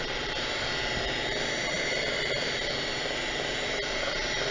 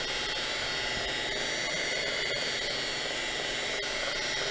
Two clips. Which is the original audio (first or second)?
second